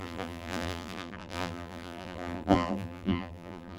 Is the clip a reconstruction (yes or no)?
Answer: yes